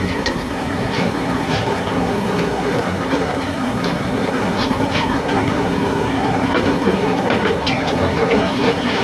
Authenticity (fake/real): fake